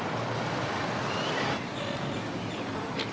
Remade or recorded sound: recorded